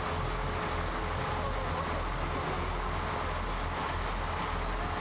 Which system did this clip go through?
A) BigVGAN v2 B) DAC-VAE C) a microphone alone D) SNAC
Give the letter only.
C